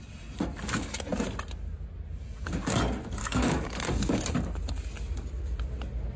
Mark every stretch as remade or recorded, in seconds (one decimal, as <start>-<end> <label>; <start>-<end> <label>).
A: 0.0-3.2 recorded; 3.2-4.2 remade; 4.2-6.2 recorded